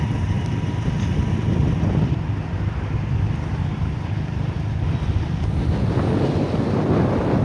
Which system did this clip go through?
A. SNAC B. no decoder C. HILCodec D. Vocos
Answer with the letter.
B